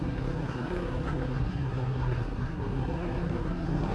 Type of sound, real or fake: fake